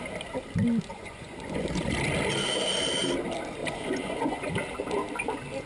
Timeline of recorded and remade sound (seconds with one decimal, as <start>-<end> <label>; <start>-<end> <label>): 0.0-0.9 recorded; 0.9-1.6 remade; 1.6-3.6 recorded; 3.6-4.5 remade; 4.5-5.7 recorded